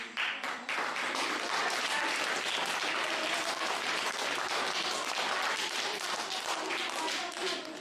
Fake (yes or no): no